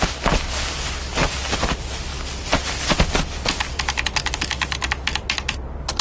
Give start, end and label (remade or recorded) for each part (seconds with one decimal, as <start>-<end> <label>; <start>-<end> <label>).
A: 0.0-6.0 recorded